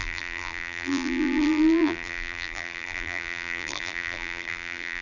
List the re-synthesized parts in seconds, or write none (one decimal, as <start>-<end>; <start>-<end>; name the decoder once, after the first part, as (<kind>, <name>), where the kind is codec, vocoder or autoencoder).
0.0-5.0 (vocoder, BigVGAN v2)